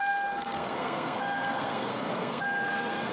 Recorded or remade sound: remade